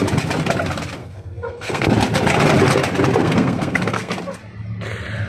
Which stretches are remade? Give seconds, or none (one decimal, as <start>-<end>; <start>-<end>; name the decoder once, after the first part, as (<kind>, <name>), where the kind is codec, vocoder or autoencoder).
1.0-1.9 (codec, SNAC); 3.2-4.1